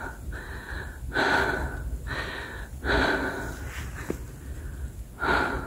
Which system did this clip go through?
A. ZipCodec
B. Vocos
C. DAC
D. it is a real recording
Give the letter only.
D